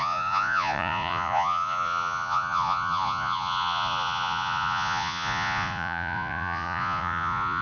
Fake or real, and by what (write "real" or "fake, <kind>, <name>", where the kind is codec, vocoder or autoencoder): fake, vocoder, Vocos